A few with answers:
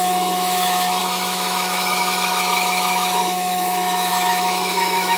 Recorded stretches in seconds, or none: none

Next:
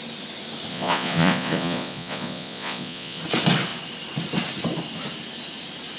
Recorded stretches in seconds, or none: 0.0-0.7; 3.2-6.0

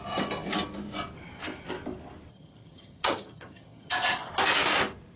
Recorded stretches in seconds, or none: 0.0-2.3; 4.3-5.2

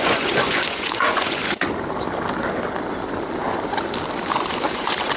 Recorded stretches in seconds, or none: 1.4-4.3

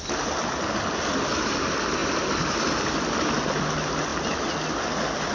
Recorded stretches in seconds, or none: 0.0-5.3

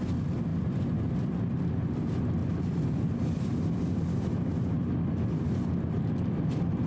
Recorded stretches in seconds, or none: 0.0-6.9

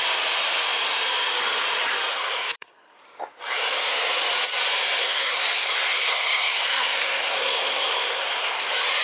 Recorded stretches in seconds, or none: 0.0-2.1; 3.0-5.0; 8.6-9.0